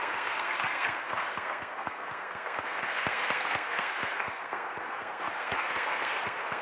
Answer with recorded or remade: remade